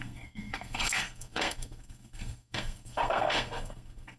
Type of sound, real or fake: fake